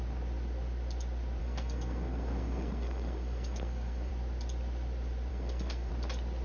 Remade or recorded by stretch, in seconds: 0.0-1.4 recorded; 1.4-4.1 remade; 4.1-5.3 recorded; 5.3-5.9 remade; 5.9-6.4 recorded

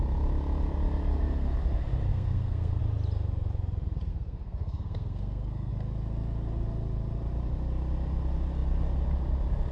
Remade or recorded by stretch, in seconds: 0.0-2.1 recorded; 2.1-2.8 remade; 2.8-4.1 recorded; 4.1-5.7 remade; 5.7-9.7 recorded

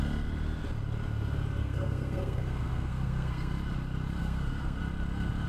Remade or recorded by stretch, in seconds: 0.0-1.6 recorded; 1.6-3.5 remade; 3.5-4.2 recorded; 4.2-4.8 remade; 4.8-5.5 recorded

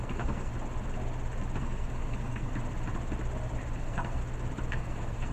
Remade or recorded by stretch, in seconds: 0.0-0.5 remade; 0.5-1.6 recorded; 1.6-2.5 remade; 2.5-3.8 recorded; 3.8-4.2 remade; 4.2-4.7 recorded; 4.7-5.3 remade

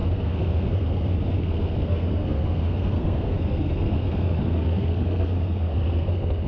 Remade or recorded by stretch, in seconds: 0.0-6.5 remade

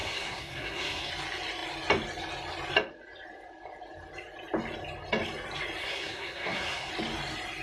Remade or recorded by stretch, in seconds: 0.0-1.1 remade; 1.1-5.8 recorded; 5.8-6.9 remade; 6.9-7.6 recorded

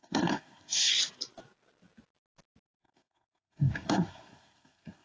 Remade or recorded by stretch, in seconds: 0.0-0.9 remade; 0.9-2.6 recorded; 2.6-5.0 remade

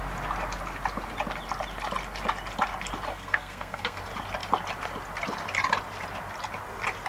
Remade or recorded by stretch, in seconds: 0.0-3.1 recorded; 3.1-4.0 remade; 4.0-7.1 recorded